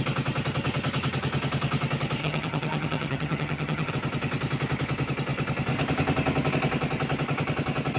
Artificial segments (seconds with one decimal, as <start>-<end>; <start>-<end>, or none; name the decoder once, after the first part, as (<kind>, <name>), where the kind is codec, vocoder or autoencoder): 2.2-3.9 (vocoder, HiFi-GAN)